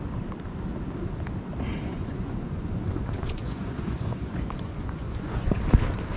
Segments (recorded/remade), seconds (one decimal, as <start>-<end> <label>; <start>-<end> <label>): 0.0-1.9 recorded; 1.9-5.6 remade; 5.6-6.2 recorded

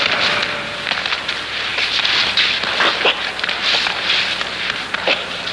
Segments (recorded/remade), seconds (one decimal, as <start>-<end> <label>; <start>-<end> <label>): 0.0-5.5 recorded

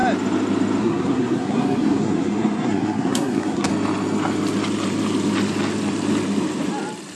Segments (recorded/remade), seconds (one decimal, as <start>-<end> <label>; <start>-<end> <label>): 0.0-0.8 recorded; 0.8-3.7 remade; 3.7-7.2 recorded

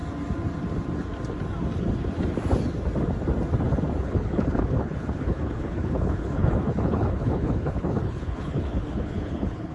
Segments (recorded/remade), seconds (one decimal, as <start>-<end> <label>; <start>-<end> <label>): 0.0-4.0 recorded; 4.0-9.7 remade

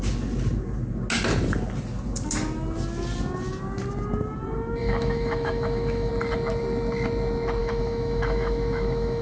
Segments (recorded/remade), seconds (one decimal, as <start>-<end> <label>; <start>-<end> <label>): 0.0-4.8 recorded; 4.8-6.1 remade; 6.1-7.6 recorded; 7.6-9.2 remade

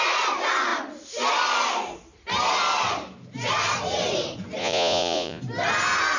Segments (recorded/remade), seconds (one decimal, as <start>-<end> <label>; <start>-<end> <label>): 0.0-4.6 recorded; 4.6-5.4 remade; 5.4-6.2 recorded

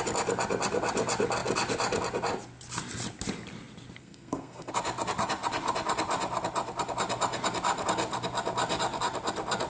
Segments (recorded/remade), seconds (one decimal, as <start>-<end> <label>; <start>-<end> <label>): 0.0-4.0 recorded; 4.0-4.7 remade; 4.7-9.7 recorded

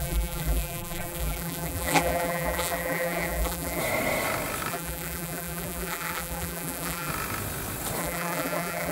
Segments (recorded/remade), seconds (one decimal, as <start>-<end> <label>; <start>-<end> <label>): 0.0-3.8 remade; 3.8-4.7 recorded; 4.7-7.1 remade; 7.1-8.0 recorded; 8.0-8.9 remade